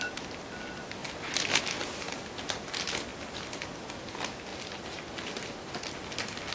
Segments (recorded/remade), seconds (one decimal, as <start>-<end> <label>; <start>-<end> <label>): 0.0-1.0 recorded; 1.0-1.6 remade; 1.6-3.1 recorded; 3.1-3.7 remade; 3.7-6.5 recorded